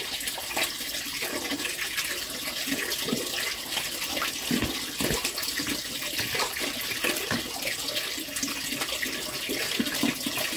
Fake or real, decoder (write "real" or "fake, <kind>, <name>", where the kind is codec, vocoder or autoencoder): real